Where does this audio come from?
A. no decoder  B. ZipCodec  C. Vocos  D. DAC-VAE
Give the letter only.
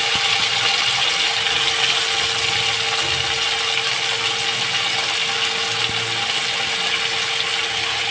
A